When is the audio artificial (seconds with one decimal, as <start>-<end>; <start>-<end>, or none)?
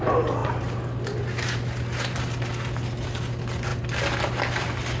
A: none